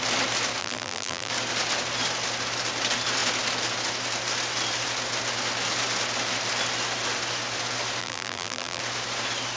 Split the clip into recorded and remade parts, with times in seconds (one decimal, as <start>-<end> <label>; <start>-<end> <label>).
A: 0.0-0.6 recorded; 0.6-1.3 remade; 1.3-8.0 recorded; 8.0-8.8 remade; 8.8-9.6 recorded